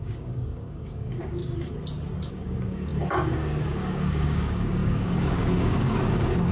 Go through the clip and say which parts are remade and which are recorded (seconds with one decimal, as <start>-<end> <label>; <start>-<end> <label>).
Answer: 0.0-1.4 remade; 1.4-2.3 recorded; 2.3-6.5 remade